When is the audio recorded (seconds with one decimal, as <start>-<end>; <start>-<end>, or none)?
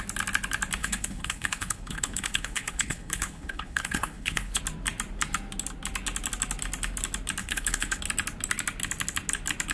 0.0-0.8; 4.6-7.4; 8.0-9.7